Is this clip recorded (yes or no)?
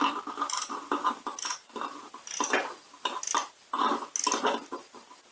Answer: yes